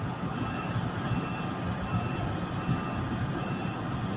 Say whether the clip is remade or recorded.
recorded